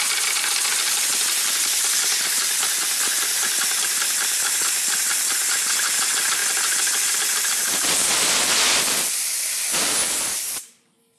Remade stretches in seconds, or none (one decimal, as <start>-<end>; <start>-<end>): none